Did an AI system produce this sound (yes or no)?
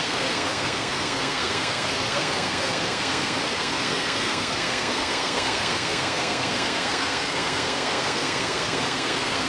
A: yes